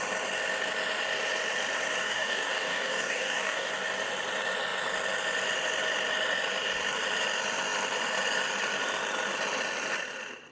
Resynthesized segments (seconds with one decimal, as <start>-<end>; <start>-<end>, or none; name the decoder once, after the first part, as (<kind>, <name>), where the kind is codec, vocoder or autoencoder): 2.0-3.7 (codec, DAC)